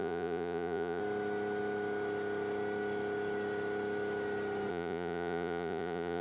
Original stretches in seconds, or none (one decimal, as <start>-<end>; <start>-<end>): 1.0-4.7